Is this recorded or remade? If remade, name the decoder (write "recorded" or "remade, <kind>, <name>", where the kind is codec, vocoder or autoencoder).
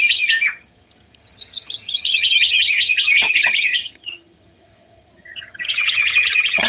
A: remade, vocoder, HiFi-GAN